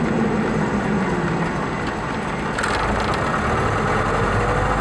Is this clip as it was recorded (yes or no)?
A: yes